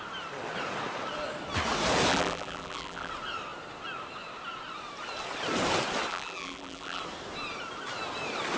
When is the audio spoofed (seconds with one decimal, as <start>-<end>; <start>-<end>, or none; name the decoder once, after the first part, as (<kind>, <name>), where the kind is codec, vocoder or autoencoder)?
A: 2.1-3.1 (vocoder, BigVGAN v2); 6.1-7.0